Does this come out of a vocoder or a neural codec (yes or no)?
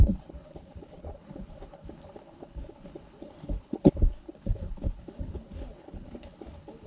yes